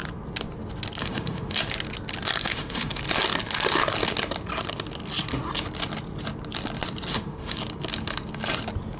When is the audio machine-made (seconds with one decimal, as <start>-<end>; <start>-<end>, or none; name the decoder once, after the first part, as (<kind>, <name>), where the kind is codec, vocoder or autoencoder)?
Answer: 1.0-1.6 (autoencoder, DAC-VAE); 2.4-3.0; 7.1-7.6